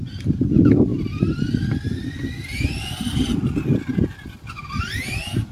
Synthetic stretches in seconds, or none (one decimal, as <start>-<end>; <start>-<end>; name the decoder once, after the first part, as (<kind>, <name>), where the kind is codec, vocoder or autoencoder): none